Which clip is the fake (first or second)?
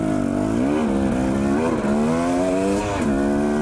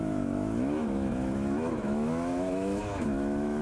second